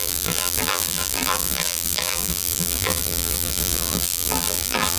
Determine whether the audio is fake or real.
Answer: fake